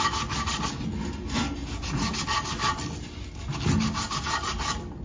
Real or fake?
real